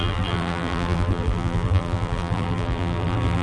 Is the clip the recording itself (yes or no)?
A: no